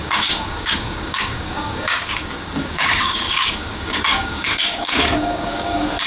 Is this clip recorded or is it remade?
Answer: remade